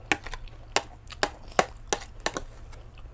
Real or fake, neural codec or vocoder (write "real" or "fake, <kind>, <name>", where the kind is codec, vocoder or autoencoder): real